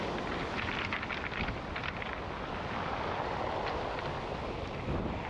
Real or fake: real